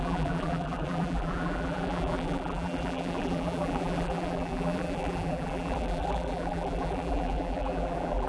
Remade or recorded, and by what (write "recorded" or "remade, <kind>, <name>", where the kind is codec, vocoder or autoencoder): remade, vocoder, BigVGAN v2